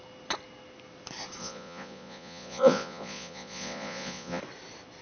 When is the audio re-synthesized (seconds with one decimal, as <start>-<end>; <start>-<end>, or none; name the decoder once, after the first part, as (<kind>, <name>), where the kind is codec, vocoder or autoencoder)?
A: 1.4-4.4 (vocoder, Vocos)